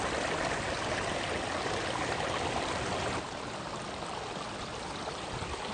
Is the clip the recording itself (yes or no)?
yes